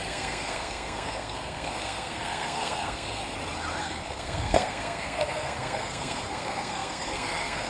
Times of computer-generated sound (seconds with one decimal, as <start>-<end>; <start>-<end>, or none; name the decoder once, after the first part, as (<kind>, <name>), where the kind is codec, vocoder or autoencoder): 0.0-3.2 (codec, SNAC); 3.8-7.7